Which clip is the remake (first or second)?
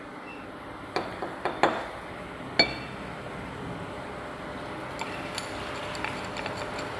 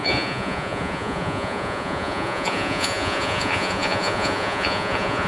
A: second